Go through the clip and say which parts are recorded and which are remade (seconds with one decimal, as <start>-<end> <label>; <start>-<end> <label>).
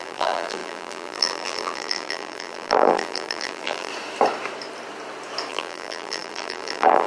0.0-3.9 remade; 3.9-5.5 recorded; 5.5-7.1 remade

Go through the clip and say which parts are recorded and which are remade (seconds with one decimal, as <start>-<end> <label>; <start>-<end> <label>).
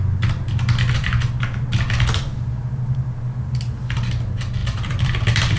0.0-4.6 recorded; 4.6-5.6 remade